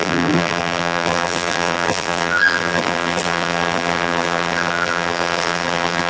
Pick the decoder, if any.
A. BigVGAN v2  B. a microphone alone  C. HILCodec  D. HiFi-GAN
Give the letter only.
A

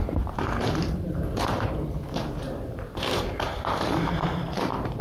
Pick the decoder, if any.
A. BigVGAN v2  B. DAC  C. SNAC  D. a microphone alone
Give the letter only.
A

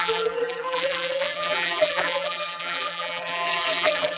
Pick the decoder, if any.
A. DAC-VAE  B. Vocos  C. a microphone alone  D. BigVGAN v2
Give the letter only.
D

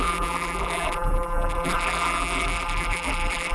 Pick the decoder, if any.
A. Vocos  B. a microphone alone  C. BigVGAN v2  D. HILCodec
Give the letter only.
C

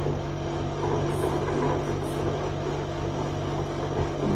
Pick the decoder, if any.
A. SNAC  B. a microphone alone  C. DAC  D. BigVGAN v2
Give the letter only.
B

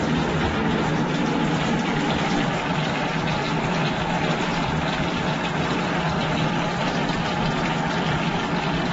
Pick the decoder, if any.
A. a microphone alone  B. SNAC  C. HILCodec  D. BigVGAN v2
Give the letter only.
A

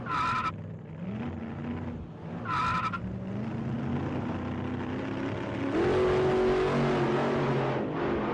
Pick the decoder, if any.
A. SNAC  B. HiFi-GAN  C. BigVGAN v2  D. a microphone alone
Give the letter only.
D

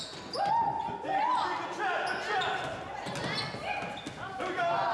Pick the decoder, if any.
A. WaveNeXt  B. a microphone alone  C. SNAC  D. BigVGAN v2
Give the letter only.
B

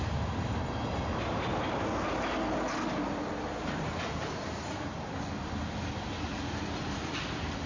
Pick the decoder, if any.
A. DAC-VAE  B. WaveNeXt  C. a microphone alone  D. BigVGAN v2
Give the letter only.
C